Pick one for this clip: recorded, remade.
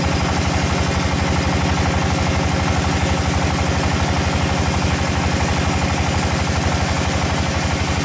recorded